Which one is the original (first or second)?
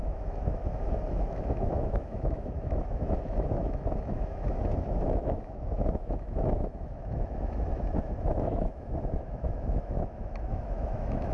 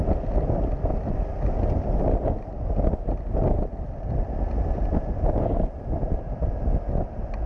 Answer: second